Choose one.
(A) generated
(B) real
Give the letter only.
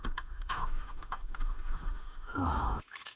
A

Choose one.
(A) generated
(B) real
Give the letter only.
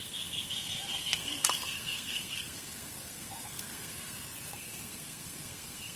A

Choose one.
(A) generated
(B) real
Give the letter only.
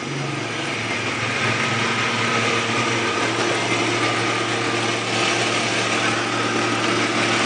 B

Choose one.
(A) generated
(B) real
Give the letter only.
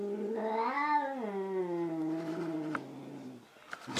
B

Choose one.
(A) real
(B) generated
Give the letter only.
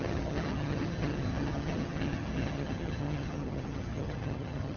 B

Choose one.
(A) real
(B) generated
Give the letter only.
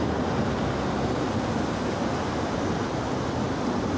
A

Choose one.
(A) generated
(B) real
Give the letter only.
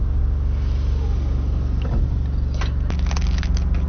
B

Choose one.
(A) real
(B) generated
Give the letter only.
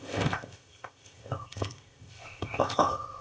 B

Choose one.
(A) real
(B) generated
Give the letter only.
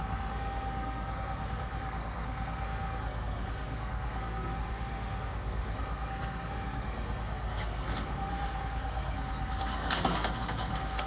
B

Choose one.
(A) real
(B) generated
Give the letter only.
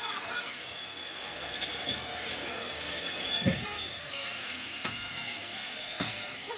B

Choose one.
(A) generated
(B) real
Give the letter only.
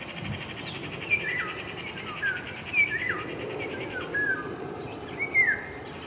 B